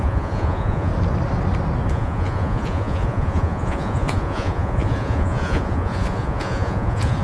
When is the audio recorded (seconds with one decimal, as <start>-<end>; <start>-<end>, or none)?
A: 0.9-1.9